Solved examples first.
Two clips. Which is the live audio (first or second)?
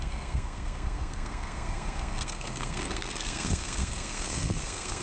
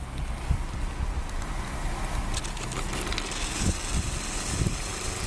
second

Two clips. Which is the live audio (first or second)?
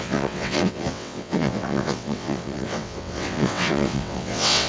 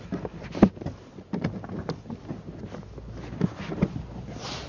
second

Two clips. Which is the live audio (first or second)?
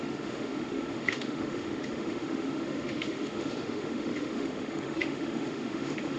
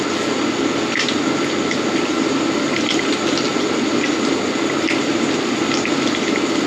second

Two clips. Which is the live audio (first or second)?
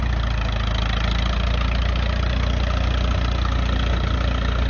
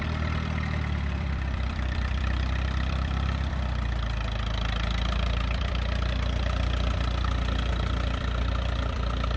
first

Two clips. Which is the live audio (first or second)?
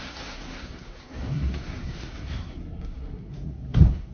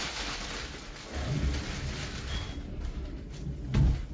second